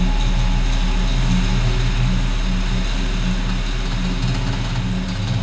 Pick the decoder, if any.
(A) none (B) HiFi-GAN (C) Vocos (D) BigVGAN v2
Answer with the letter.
A